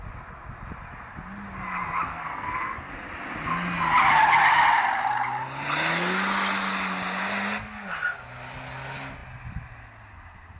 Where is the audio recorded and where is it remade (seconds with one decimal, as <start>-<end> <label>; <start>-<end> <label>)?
0.0-2.1 recorded; 2.1-2.9 remade; 2.9-10.6 recorded